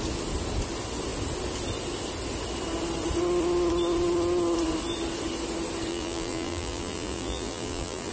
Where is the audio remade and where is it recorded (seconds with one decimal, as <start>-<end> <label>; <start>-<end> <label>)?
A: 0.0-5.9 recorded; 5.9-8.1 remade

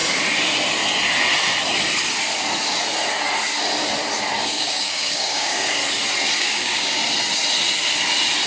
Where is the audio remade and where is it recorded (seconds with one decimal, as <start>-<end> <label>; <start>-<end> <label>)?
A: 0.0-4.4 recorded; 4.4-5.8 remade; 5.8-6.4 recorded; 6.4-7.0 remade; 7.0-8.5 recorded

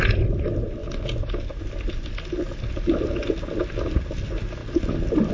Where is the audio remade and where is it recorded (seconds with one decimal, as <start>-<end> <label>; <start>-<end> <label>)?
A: 0.0-5.3 recorded

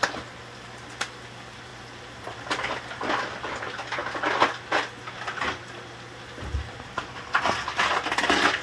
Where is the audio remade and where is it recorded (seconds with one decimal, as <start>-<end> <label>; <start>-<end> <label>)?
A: 0.0-8.6 recorded

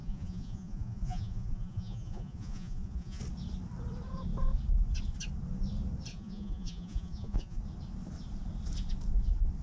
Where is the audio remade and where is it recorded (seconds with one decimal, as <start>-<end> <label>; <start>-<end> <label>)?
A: 0.0-3.2 remade; 3.2-6.1 recorded; 6.1-7.6 remade; 7.6-9.6 recorded